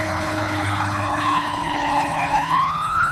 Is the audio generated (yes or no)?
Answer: yes